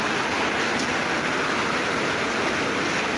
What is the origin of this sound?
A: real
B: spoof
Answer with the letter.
A